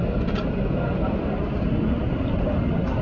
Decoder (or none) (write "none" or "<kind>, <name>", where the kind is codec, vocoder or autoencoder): none